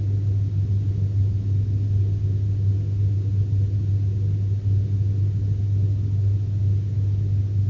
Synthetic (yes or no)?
no